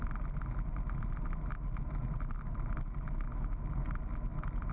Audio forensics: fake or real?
real